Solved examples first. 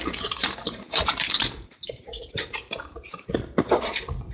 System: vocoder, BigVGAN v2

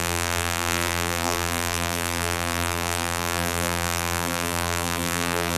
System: vocoder, BigVGAN v2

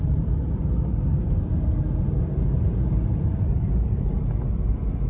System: vocoder, BigVGAN v2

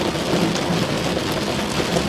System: none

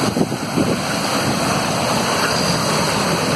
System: vocoder, BigVGAN v2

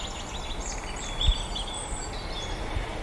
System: none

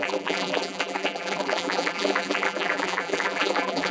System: vocoder, BigVGAN v2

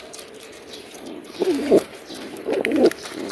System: vocoder, BigVGAN v2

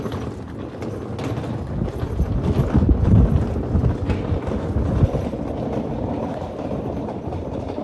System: none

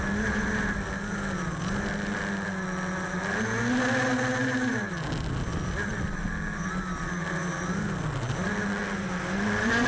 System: none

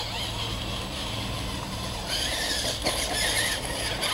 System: none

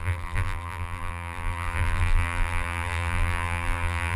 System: vocoder, BigVGAN v2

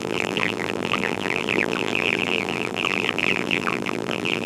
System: vocoder, BigVGAN v2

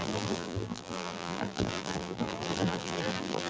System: vocoder, BigVGAN v2